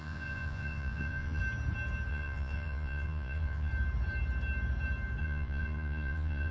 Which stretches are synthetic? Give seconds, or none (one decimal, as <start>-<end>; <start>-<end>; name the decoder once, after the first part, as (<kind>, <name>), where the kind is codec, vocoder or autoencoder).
0.0-1.4 (vocoder, Vocos); 2.1-3.7; 5.2-6.5